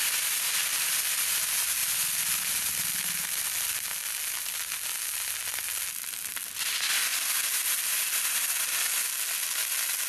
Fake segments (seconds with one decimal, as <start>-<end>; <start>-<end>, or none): none